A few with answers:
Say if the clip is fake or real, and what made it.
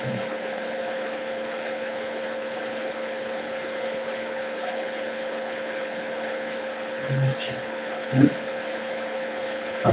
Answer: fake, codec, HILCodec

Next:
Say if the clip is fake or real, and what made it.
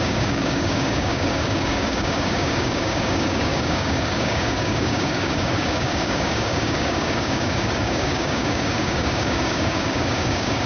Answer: fake, codec, DAC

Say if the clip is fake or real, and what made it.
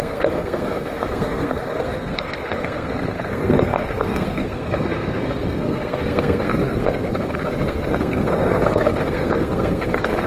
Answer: fake, codec, SNAC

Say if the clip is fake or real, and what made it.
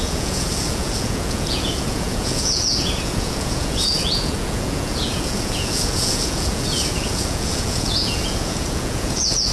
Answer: fake, vocoder, Vocos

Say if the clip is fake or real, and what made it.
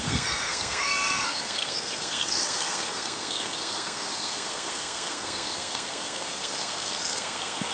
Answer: fake, codec, SNAC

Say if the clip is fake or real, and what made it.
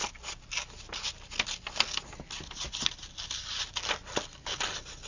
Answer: real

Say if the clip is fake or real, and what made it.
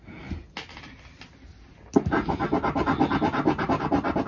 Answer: real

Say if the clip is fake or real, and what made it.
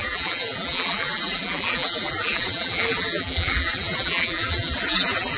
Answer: fake, vocoder, BigVGAN v2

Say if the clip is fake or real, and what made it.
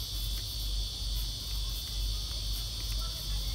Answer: real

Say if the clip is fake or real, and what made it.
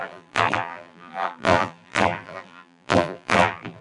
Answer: fake, vocoder, BigVGAN v2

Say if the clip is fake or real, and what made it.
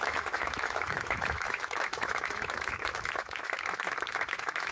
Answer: fake, autoencoder, DAC-VAE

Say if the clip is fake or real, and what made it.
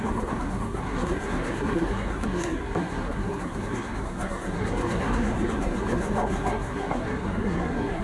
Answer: fake, codec, SNAC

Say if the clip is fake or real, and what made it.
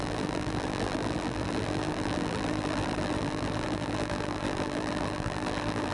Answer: fake, vocoder, BigVGAN v2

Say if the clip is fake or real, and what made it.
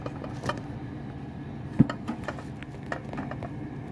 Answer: real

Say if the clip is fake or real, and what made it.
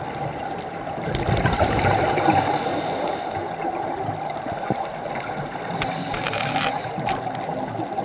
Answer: real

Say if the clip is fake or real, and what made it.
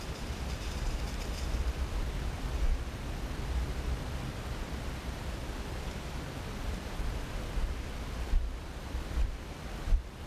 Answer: fake, vocoder, BigVGAN v2